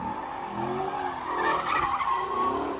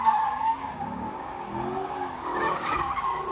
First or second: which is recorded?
first